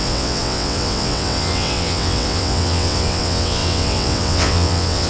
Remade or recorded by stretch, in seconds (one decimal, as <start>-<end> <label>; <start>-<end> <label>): 0.0-5.1 remade